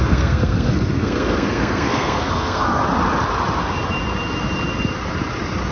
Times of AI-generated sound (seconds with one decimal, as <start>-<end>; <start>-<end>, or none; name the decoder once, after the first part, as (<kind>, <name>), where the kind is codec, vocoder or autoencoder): 0.0-2.8 (codec, SNAC)